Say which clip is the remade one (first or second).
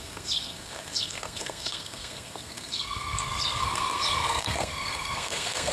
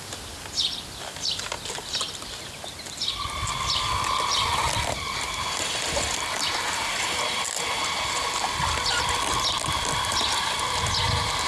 first